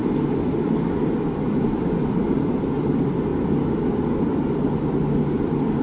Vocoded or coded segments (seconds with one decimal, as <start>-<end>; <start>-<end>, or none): none